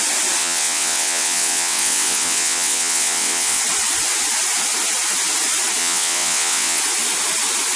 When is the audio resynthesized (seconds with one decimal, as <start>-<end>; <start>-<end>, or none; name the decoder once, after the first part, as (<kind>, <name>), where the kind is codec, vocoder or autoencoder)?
0.4-3.6 (vocoder, WaveNeXt); 5.8-6.8